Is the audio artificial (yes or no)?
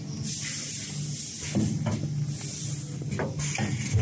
no